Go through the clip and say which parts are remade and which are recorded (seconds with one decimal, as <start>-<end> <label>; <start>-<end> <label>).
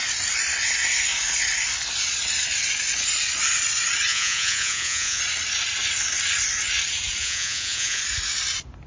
0.0-4.1 recorded; 4.1-5.2 remade; 5.2-7.2 recorded; 7.2-8.0 remade; 8.0-8.9 recorded